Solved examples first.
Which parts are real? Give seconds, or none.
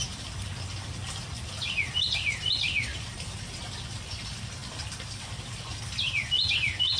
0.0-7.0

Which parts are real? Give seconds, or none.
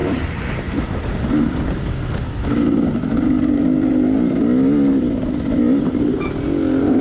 1.2-7.0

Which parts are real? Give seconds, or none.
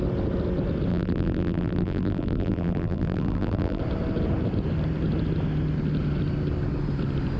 0.0-0.9; 3.8-7.4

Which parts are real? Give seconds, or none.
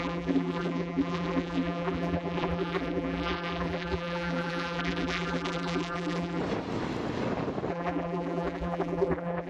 6.4-7.7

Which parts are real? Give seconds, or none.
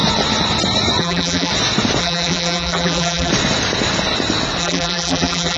0.0-1.0; 1.5-2.0; 3.3-4.6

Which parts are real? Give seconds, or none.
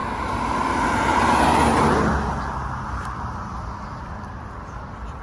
0.0-5.2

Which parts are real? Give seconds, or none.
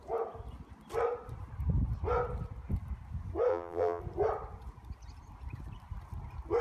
0.0-3.5; 4.0-6.6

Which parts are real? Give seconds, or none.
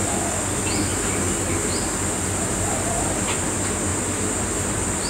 0.0-0.9; 2.7-3.9; 4.4-5.1